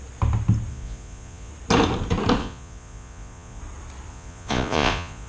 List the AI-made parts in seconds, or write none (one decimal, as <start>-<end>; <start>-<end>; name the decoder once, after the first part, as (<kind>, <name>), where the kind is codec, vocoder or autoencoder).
0.7-1.5 (vocoder, Vocos); 2.4-3.6; 4.1-5.3